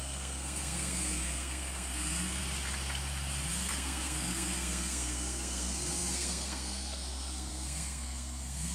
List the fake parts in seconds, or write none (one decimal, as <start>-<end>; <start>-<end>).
0.0-2.4; 3.5-8.7